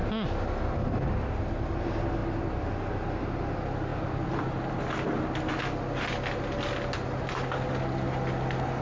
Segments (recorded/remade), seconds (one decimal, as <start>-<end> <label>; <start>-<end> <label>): 0.0-2.2 recorded; 2.2-2.8 remade; 2.8-3.9 recorded; 3.9-4.8 remade; 4.8-8.8 recorded